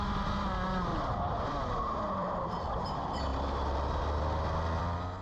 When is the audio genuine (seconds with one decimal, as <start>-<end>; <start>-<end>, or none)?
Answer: 0.0-0.9; 2.9-5.2